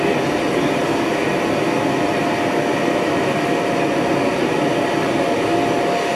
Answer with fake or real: real